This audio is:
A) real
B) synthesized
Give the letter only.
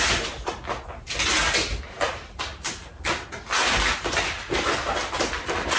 A